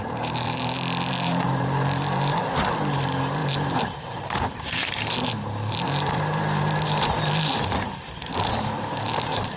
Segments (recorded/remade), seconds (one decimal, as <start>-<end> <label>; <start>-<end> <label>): 0.0-9.6 remade